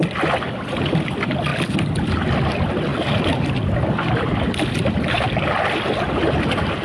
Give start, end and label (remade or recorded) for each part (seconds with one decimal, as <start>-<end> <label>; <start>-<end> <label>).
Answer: 0.0-1.5 recorded; 1.5-2.1 remade; 2.1-2.9 recorded; 2.9-4.7 remade; 4.7-6.8 recorded